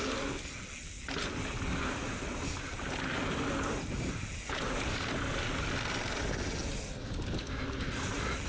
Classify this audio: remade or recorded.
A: recorded